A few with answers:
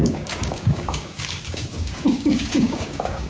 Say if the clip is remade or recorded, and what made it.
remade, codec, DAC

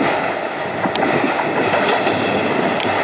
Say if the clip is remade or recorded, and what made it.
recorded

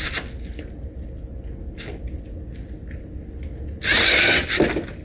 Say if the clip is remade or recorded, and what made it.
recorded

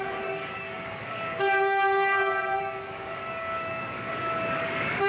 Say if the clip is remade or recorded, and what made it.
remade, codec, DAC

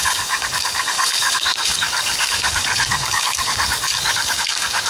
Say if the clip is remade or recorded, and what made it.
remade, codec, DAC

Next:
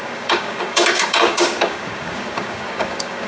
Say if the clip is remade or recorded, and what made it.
remade, codec, DAC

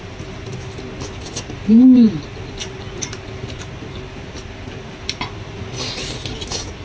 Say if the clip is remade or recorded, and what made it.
recorded